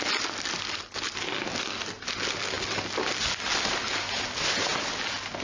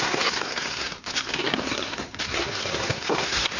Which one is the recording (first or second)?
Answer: first